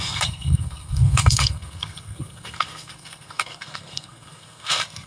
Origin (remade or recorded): remade